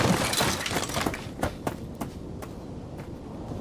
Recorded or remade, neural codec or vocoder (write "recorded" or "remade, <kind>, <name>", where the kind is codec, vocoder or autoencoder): remade, vocoder, BigVGAN v2